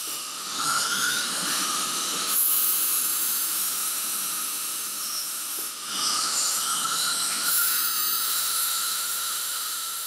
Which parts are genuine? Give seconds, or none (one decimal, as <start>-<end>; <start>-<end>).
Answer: none